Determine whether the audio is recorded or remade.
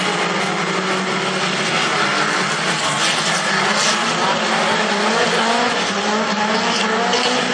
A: recorded